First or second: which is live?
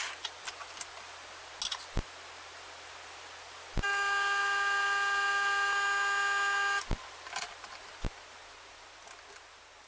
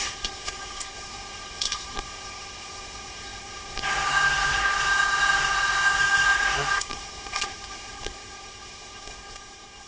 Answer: first